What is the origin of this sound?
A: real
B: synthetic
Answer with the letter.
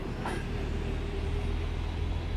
A